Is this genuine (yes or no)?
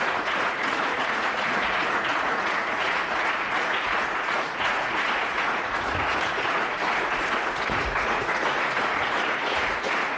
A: no